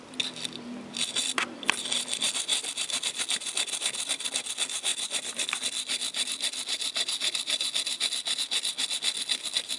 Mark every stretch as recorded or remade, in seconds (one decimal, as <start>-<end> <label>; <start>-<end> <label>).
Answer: 0.0-2.5 recorded; 2.5-4.5 remade; 4.5-4.9 recorded; 4.9-5.6 remade; 5.6-9.8 recorded